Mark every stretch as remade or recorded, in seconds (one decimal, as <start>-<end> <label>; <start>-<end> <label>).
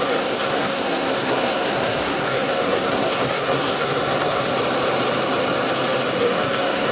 0.0-4.5 remade; 4.5-6.2 recorded; 6.2-6.9 remade